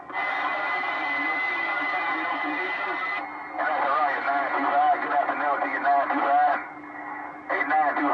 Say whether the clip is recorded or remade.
remade